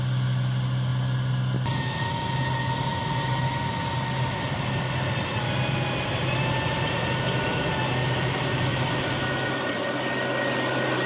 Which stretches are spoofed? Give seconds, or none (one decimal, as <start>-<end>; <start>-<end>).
8.7-9.8